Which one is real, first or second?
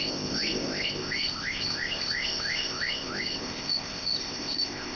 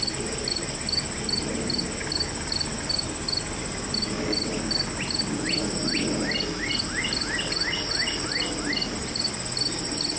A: second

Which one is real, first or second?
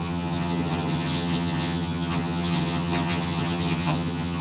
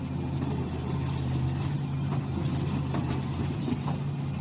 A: second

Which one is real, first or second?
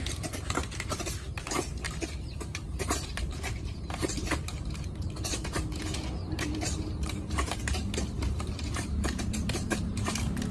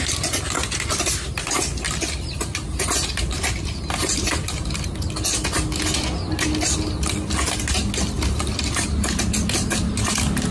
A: second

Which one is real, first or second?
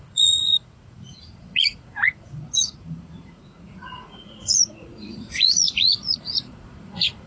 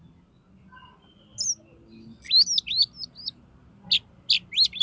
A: second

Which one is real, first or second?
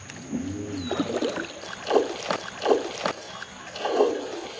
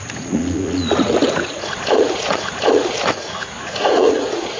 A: first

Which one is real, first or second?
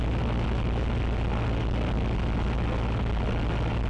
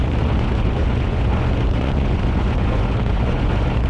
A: first